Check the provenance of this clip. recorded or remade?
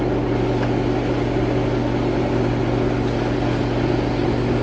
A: recorded